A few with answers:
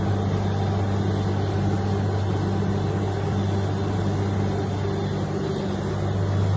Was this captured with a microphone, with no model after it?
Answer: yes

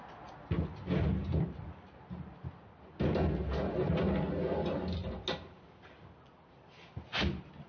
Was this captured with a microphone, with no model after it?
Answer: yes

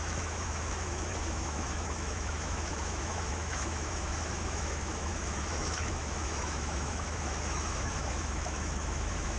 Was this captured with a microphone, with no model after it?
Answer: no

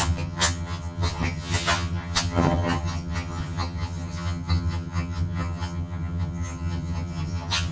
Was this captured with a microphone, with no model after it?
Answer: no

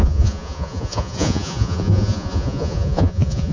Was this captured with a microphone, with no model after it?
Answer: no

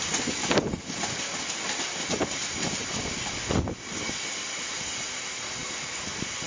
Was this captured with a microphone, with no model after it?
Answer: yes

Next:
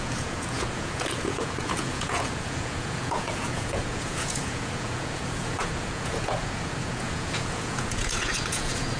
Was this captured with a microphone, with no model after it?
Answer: no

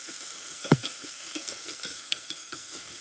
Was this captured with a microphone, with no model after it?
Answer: no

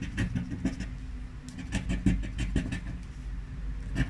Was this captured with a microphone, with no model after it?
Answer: yes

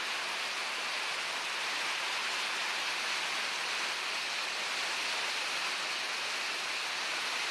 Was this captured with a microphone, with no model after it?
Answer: yes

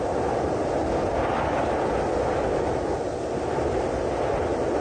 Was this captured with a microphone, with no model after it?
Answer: yes